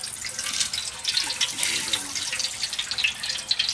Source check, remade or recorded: recorded